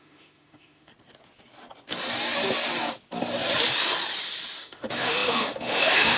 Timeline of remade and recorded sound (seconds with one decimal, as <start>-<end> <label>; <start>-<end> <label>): 0.0-0.9 remade; 0.9-4.6 recorded; 4.6-6.2 remade